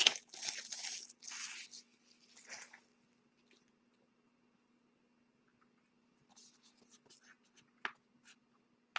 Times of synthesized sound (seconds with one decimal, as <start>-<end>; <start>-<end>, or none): none